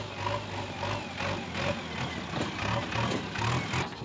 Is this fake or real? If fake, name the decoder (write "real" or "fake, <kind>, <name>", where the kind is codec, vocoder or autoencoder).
real